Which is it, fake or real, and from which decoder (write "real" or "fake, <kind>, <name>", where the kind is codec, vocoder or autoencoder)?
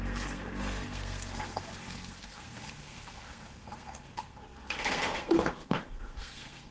fake, codec, SNAC